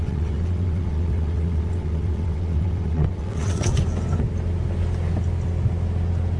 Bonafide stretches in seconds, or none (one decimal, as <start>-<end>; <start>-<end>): 3.8-6.4